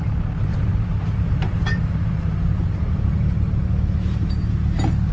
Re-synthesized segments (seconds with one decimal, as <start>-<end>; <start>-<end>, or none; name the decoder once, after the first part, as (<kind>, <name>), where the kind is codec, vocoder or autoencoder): 0.5-3.6 (vocoder, BigVGAN v2)